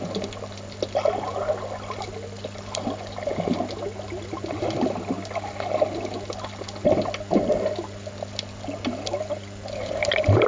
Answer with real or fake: real